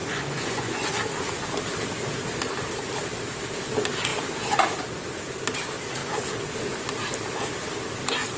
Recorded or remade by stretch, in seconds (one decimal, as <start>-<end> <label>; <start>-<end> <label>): 0.0-0.9 remade; 0.9-8.4 recorded